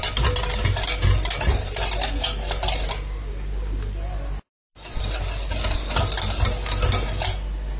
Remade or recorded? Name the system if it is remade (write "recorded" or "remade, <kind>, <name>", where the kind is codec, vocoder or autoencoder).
recorded